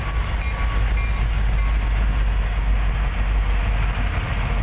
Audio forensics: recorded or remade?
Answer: recorded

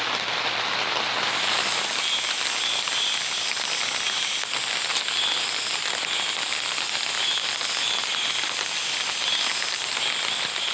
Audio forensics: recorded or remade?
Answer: recorded